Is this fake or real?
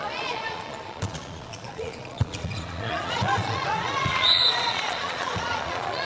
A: fake